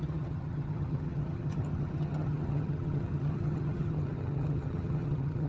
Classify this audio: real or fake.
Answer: fake